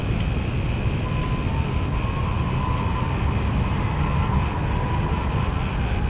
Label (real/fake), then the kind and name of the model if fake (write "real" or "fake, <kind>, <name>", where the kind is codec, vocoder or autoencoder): real